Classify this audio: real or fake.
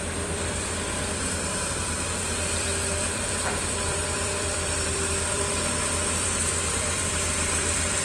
fake